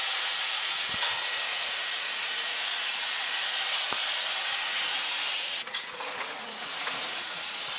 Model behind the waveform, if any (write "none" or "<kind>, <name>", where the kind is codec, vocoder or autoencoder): vocoder, Vocos